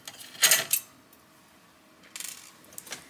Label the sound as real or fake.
real